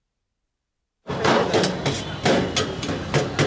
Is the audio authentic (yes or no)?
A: yes